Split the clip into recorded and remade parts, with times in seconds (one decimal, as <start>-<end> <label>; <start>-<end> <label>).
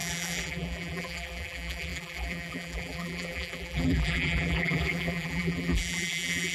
0.0-6.5 remade